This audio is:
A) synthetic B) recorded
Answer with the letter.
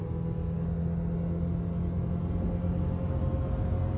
B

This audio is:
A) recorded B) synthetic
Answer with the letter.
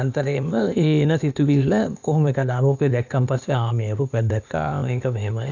B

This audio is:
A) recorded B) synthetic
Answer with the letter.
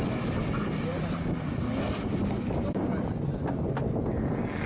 A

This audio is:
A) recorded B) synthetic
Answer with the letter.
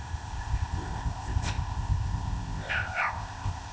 B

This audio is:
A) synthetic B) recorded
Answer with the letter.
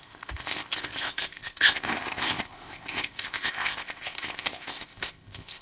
A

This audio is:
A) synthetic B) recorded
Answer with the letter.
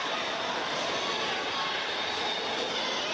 B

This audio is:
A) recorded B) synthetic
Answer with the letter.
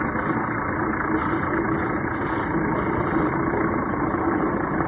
A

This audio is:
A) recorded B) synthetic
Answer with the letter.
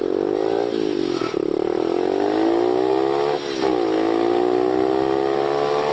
A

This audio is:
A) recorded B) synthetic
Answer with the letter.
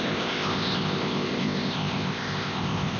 B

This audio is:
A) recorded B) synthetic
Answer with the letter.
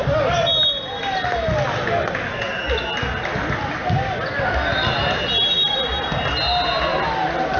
A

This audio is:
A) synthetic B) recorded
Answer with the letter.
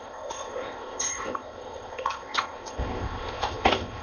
A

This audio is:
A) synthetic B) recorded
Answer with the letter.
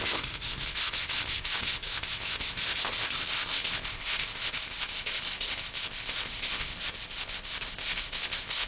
A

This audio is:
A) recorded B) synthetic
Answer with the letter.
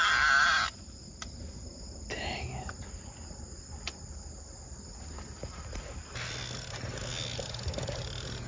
A